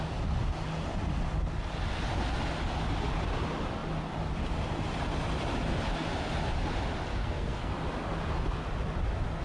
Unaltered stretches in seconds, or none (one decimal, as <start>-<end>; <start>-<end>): 0.0-7.2; 7.7-9.4